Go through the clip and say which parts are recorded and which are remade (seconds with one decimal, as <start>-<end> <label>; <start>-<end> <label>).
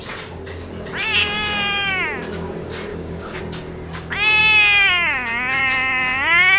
0.0-1.2 recorded; 1.2-1.9 remade; 1.9-2.9 recorded; 2.9-3.4 remade; 3.4-6.6 recorded